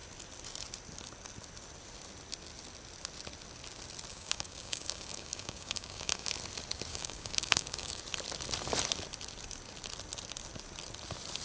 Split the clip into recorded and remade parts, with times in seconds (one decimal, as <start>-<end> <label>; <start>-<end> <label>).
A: 0.0-4.1 recorded; 4.1-6.3 remade; 6.3-6.9 recorded; 6.9-8.0 remade; 8.0-11.4 recorded